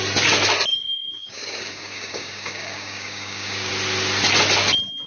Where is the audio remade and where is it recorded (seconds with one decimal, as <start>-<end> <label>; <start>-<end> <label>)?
0.0-0.7 recorded; 0.7-3.7 remade; 3.7-5.1 recorded